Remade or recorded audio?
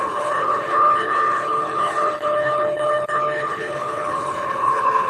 remade